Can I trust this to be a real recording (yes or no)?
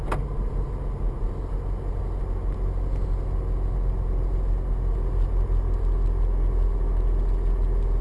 yes